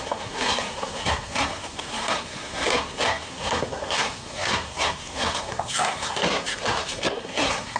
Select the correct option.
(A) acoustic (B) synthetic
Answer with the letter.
B